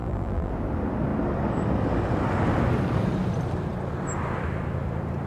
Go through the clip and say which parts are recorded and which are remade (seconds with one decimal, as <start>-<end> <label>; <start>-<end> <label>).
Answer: 0.0-0.5 remade; 0.5-5.3 recorded